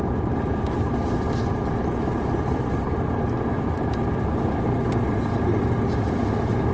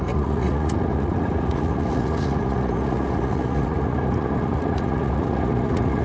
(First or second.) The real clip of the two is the first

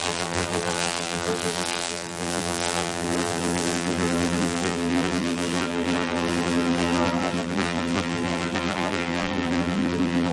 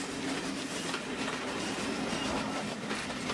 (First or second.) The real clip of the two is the second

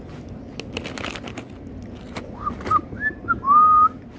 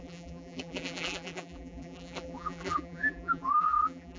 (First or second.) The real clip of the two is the first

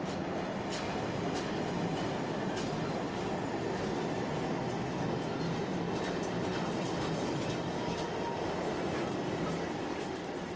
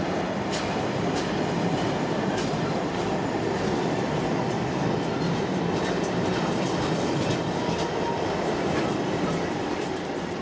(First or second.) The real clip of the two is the first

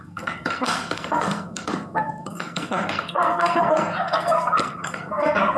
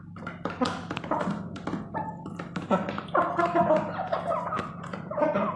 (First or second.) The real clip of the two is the second